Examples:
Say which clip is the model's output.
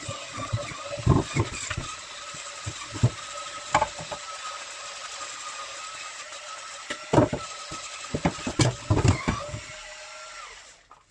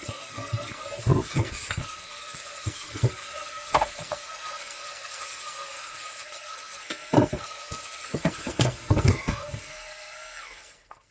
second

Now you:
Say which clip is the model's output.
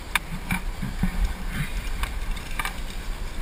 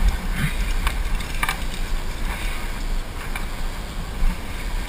first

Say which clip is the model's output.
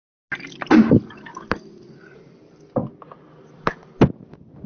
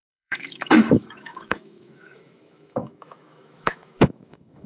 second